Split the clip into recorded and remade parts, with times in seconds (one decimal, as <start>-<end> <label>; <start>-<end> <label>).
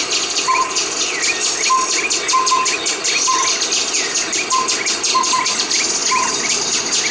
0.0-7.1 recorded